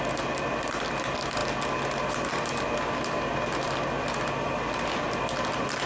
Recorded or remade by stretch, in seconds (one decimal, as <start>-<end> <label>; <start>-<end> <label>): 0.0-5.9 recorded

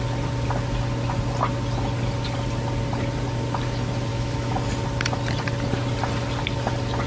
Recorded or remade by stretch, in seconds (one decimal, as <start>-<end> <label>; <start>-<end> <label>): 0.0-4.1 recorded; 4.1-4.6 remade; 4.6-7.1 recorded

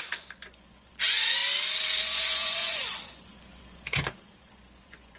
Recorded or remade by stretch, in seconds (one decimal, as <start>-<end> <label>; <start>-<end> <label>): 0.0-1.4 remade; 1.4-2.0 recorded; 2.0-5.2 remade

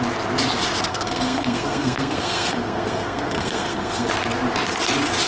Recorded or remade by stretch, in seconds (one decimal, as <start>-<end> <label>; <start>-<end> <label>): 0.0-0.9 recorded; 0.9-4.1 remade; 4.1-5.3 recorded

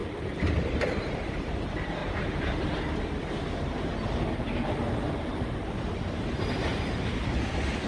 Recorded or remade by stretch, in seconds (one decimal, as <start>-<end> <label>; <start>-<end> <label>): 0.0-1.5 remade; 1.5-2.0 recorded; 2.0-3.0 remade; 3.0-5.3 recorded; 5.3-5.8 remade; 5.8-6.7 recorded; 6.7-7.9 remade